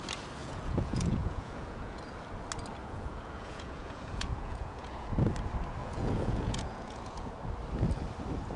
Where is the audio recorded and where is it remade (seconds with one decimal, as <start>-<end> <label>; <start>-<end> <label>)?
0.0-0.4 recorded; 0.4-2.0 remade; 2.0-2.8 recorded; 2.8-5.1 remade; 5.1-5.8 recorded; 5.8-7.3 remade; 7.3-8.6 recorded